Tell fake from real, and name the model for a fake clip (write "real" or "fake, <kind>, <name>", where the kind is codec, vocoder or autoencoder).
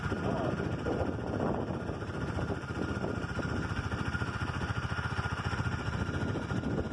fake, vocoder, BigVGAN v2